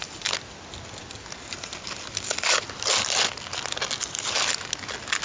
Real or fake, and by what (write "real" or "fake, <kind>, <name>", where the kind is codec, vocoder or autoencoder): real